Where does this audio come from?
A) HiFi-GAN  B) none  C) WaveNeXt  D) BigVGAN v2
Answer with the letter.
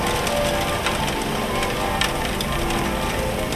B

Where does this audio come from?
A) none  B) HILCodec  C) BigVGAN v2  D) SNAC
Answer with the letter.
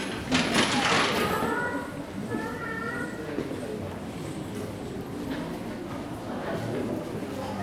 A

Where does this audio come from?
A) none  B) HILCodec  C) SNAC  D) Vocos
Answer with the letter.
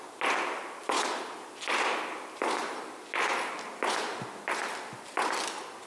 A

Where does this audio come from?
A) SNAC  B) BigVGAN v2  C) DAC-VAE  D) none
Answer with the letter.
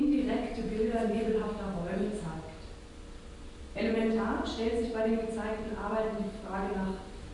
D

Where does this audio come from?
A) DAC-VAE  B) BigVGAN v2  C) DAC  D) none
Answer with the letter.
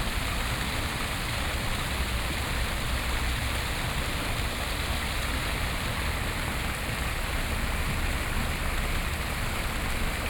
D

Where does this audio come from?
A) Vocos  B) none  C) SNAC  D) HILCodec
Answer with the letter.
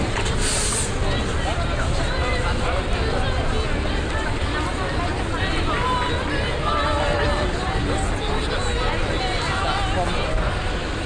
B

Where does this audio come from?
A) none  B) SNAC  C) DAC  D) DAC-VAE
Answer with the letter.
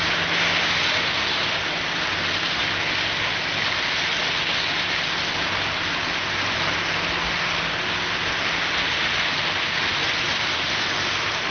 A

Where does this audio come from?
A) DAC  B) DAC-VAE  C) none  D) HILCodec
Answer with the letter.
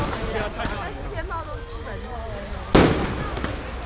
C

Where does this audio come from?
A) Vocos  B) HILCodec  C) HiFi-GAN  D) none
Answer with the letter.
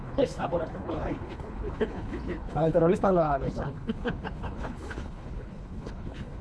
B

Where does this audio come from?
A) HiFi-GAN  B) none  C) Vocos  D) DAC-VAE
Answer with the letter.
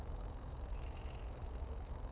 D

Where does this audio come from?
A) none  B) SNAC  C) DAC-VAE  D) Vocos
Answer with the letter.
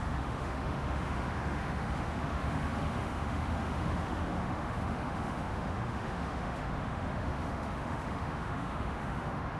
C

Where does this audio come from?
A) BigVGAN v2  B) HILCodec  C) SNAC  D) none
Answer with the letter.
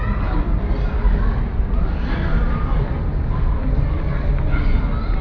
D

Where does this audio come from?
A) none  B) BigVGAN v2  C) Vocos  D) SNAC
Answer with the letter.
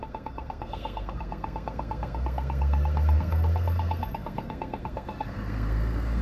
D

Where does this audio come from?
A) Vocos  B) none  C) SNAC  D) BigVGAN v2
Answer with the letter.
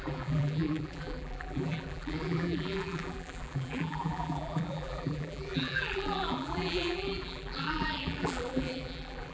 D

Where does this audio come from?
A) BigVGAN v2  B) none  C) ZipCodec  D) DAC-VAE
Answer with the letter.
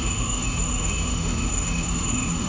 D